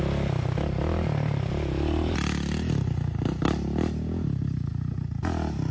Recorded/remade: recorded